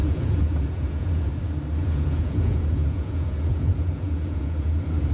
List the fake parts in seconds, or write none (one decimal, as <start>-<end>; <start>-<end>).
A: 0.0-1.3; 1.8-5.1